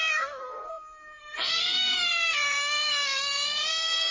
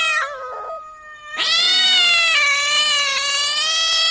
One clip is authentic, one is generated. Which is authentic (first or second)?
second